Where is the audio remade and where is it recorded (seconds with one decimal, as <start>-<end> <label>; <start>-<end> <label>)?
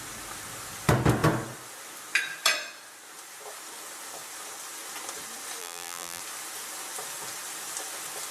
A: 0.0-5.6 recorded; 5.6-6.2 remade; 6.2-8.3 recorded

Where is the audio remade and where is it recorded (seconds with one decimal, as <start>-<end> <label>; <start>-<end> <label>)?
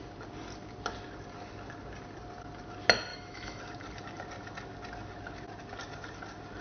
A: 0.0-3.1 recorded; 3.1-3.6 remade; 3.6-6.6 recorded